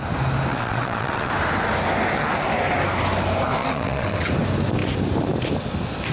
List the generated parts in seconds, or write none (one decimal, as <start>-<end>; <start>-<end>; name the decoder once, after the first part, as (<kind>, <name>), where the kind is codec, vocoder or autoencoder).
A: 0.5-1.3 (vocoder, WaveNeXt); 3.6-4.3